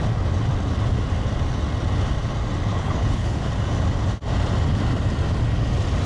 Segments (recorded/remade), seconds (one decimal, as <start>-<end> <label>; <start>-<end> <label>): 0.0-2.7 recorded; 2.7-3.5 remade; 3.5-6.1 recorded